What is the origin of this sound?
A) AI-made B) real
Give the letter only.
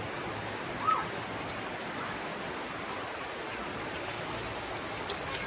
B